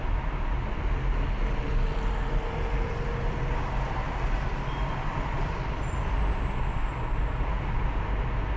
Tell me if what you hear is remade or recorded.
recorded